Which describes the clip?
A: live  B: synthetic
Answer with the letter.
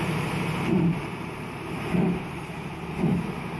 B